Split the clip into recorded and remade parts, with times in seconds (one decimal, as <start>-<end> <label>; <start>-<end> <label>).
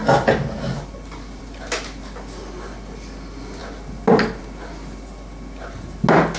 0.0-6.4 recorded